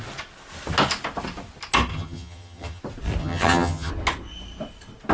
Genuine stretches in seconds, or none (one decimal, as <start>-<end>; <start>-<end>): 0.0-1.9; 2.8-3.2; 3.9-5.1